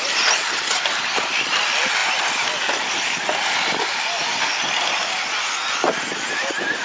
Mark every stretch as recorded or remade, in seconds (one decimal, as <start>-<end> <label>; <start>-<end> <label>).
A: 0.0-6.8 recorded